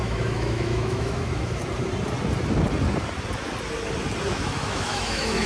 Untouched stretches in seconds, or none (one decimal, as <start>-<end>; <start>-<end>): 1.6-4.3